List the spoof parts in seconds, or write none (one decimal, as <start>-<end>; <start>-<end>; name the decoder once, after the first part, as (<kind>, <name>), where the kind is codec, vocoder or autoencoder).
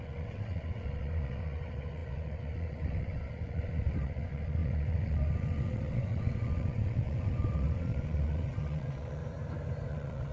0.0-9.2 (vocoder, WaveNeXt); 9.9-10.3